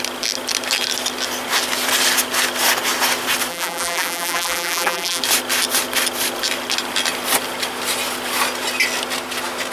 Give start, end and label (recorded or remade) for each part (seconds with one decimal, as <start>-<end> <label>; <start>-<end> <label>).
0.0-3.5 recorded; 3.5-5.2 remade; 5.2-9.7 recorded